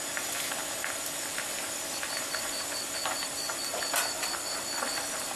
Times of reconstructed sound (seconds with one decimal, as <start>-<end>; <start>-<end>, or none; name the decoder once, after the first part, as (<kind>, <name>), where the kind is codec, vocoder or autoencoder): 0.6-3.0 (vocoder, BigVGAN v2)

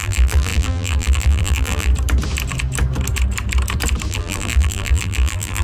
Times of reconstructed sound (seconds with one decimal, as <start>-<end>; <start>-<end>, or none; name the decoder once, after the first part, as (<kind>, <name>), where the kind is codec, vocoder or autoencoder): 0.0-1.9 (vocoder, BigVGAN v2); 4.1-5.6

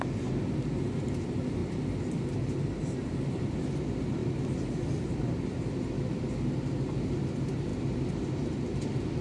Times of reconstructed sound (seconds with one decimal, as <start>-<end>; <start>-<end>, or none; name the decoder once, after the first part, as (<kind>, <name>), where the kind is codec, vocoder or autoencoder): none

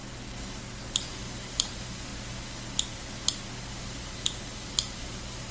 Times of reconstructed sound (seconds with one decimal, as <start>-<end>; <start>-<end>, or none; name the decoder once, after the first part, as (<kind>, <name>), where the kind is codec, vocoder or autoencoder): 1.1-2.1 (vocoder, BigVGAN v2); 3.8-5.5

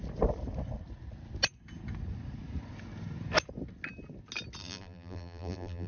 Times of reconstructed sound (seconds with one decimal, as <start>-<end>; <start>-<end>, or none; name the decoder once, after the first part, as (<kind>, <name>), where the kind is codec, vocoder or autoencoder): 4.6-5.9 (vocoder, BigVGAN v2)